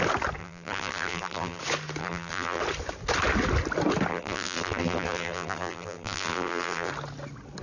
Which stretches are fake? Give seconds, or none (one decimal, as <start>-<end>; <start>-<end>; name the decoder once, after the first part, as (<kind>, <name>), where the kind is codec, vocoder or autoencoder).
0.4-1.6 (vocoder, BigVGAN v2); 2.0-2.6; 4.1-6.9